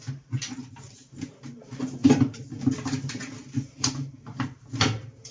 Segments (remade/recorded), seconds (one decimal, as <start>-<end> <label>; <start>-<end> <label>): 0.0-5.3 recorded